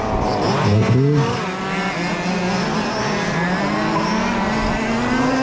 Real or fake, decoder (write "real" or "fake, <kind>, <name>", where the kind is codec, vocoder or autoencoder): real